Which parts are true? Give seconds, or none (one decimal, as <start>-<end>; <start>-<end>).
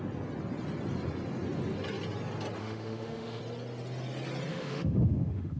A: 0.0-2.6; 3.4-4.5